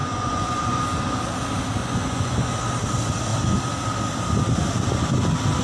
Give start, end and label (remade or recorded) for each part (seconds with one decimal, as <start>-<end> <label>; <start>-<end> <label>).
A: 0.0-0.8 remade; 0.8-1.8 recorded; 1.8-2.5 remade; 2.5-5.6 recorded